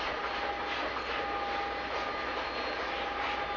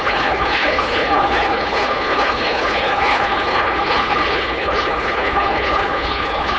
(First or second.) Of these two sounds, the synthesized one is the second